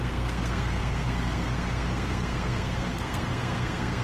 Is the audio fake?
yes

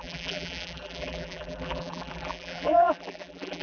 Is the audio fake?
yes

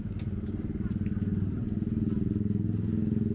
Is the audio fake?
no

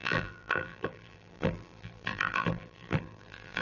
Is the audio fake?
yes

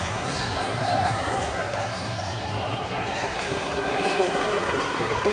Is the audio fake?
yes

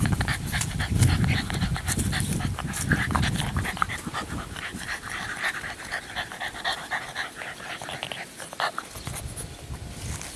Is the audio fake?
no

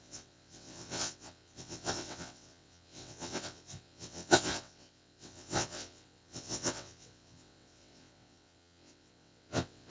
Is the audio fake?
yes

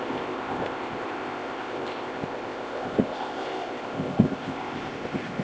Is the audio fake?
yes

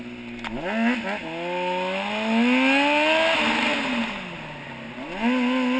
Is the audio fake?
no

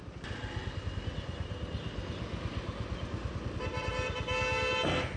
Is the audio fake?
no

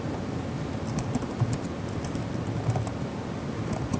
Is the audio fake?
no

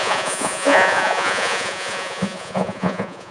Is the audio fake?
yes